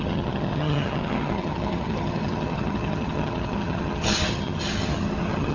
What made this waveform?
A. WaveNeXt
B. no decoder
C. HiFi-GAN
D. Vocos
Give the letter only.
C